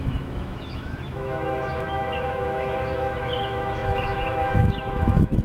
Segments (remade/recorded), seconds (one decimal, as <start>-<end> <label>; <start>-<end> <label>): 0.0-5.4 remade